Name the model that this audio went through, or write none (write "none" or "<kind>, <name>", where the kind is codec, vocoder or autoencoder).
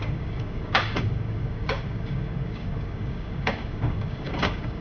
codec, DAC